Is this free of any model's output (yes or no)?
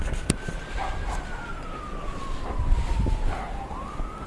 yes